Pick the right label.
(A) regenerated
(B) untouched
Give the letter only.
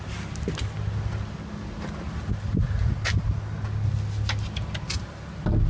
B